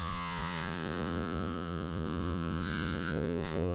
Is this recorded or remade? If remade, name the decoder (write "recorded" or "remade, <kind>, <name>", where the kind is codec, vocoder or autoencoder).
remade, vocoder, Vocos